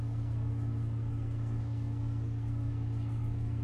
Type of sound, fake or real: fake